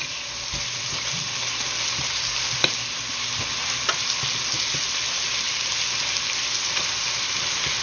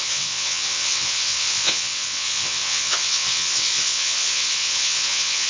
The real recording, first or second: first